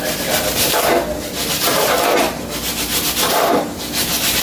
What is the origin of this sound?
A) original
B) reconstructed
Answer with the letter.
A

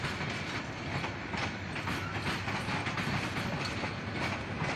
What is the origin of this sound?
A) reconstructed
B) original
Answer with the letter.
B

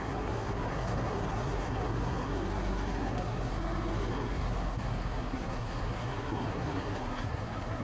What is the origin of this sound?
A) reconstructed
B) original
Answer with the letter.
A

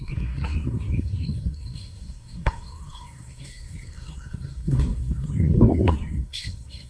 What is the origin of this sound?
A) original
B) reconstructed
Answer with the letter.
B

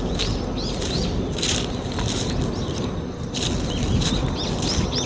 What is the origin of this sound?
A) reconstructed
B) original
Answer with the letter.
B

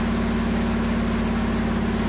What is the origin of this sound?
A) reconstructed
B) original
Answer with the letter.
B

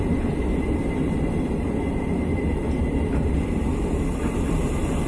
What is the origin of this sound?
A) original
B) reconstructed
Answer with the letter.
B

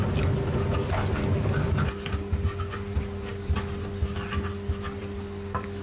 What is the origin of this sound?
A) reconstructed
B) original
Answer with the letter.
B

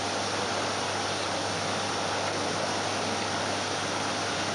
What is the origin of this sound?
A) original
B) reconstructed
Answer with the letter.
A